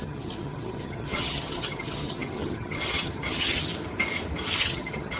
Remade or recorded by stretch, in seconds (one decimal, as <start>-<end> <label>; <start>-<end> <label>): 0.0-3.7 remade; 3.7-4.6 recorded; 4.6-5.2 remade